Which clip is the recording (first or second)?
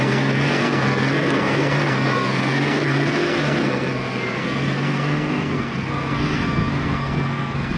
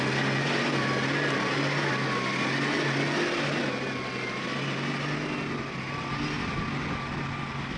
second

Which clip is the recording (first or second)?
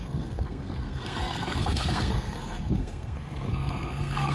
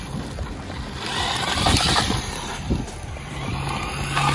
second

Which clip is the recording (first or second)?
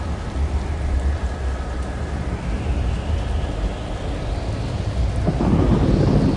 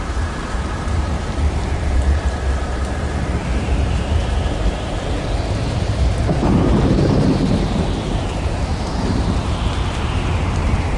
first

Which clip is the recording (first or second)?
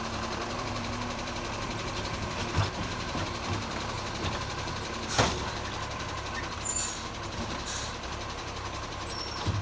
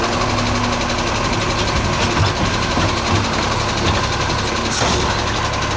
second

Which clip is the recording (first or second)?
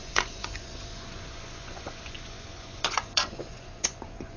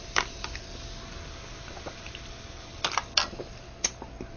second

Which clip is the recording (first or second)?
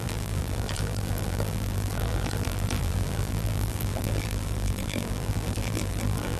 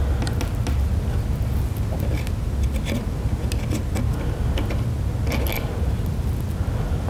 second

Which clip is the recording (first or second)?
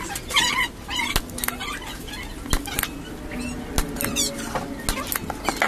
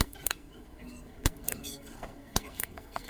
first